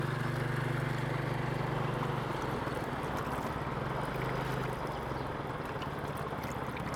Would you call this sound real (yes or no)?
yes